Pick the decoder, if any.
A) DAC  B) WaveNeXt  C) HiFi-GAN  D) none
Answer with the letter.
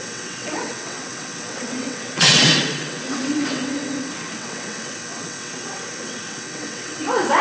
B